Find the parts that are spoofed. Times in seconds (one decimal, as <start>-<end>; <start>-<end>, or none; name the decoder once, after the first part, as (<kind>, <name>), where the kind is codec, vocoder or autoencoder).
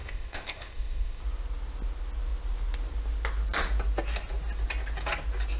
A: 0.0-1.2 (codec, ZipCodec)